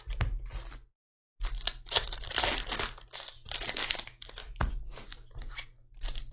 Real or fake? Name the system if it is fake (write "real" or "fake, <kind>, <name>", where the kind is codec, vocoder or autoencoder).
real